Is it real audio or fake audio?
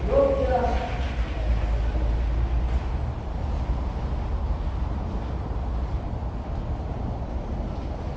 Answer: real